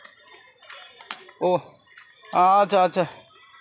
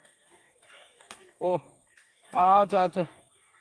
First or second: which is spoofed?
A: second